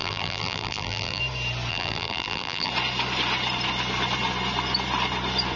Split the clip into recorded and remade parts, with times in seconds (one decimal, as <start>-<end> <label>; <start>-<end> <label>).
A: 0.0-1.2 remade; 1.2-1.7 recorded; 1.7-2.7 remade; 2.7-5.6 recorded